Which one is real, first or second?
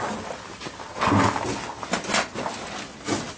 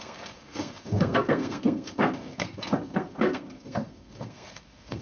first